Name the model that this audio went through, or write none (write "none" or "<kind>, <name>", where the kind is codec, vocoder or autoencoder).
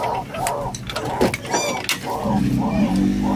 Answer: none